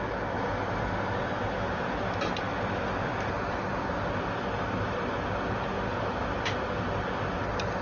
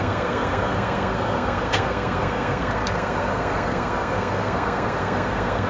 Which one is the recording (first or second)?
first